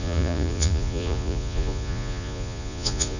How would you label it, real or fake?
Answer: fake